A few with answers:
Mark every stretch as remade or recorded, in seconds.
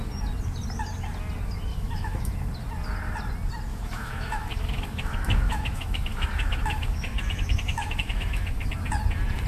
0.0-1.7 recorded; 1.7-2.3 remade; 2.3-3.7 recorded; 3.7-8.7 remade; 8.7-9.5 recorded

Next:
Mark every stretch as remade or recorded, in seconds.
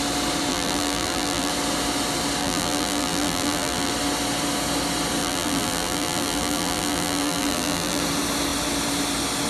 0.0-0.5 recorded; 0.5-1.5 remade; 1.5-2.4 recorded; 2.4-3.9 remade; 3.9-5.2 recorded; 5.2-8.0 remade; 8.0-9.5 recorded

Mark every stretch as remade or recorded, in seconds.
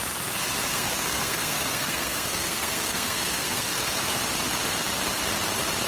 0.0-0.7 recorded; 0.7-4.2 remade; 4.2-5.9 recorded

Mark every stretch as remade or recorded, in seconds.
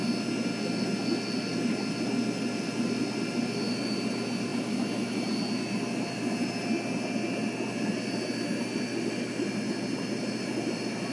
0.0-11.1 recorded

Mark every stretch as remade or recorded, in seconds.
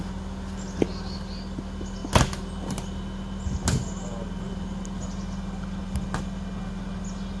0.0-7.4 recorded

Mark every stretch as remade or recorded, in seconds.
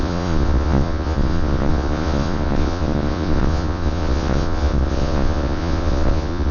0.0-6.5 remade